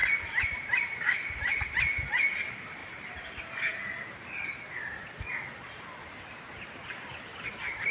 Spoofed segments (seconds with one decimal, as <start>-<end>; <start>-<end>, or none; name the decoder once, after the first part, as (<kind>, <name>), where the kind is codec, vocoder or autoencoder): none

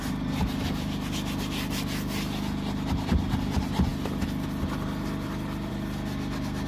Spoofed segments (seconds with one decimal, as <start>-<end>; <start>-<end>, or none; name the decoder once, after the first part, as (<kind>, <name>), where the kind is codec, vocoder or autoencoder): none

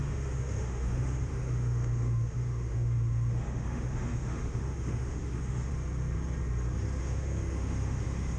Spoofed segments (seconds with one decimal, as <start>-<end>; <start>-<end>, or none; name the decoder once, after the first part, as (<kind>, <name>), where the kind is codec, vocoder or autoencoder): 0.0-5.7 (autoencoder, DAC-VAE); 7.0-8.4

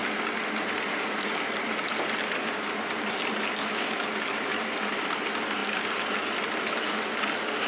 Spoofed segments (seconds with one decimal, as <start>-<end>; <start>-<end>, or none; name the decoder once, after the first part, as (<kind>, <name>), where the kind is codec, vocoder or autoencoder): 3.6-4.6 (autoencoder, DAC-VAE)

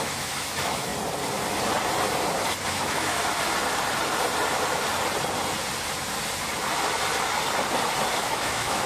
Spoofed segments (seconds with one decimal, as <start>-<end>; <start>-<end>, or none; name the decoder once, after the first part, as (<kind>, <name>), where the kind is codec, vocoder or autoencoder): 0.0-0.9 (autoencoder, DAC-VAE); 2.7-3.2; 8.2-8.9

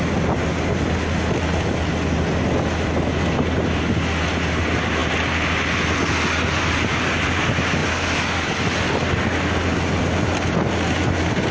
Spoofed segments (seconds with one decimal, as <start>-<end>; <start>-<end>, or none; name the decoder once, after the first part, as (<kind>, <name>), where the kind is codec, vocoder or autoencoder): none

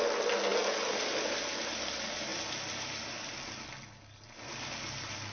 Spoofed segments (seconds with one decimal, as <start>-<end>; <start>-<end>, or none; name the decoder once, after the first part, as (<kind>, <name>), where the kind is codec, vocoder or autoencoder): none